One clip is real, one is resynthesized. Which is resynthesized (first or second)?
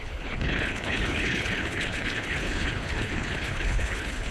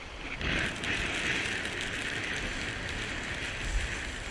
first